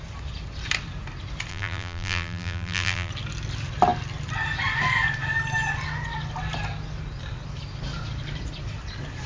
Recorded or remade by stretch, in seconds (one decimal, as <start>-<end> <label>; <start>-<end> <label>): 0.0-1.5 recorded; 1.5-3.1 remade; 3.1-9.3 recorded